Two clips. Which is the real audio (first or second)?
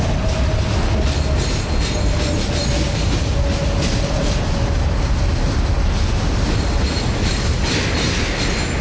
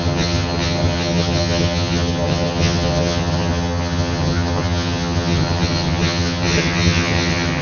first